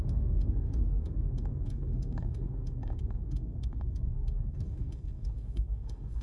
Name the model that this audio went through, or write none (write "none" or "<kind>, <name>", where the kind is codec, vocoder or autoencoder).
codec, SNAC